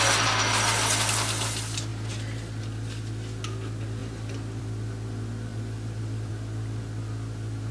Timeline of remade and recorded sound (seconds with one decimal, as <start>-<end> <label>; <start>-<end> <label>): 0.0-1.9 recorded; 1.9-2.6 remade; 2.6-5.5 recorded; 5.5-6.3 remade; 6.3-7.7 recorded